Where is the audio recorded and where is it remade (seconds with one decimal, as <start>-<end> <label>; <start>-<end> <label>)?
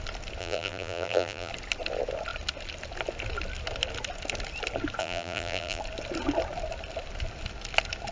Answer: 0.0-0.4 recorded; 0.4-1.5 remade; 1.5-5.0 recorded; 5.0-5.8 remade; 5.8-8.1 recorded